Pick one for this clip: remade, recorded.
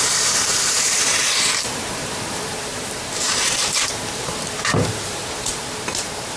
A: remade